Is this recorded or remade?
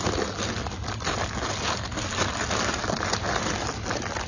recorded